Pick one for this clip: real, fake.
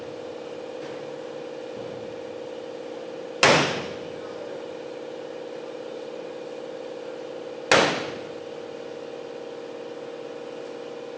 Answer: real